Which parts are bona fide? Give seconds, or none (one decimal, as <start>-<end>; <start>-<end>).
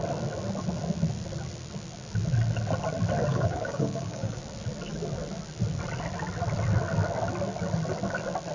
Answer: 0.0-3.3; 4.4-8.5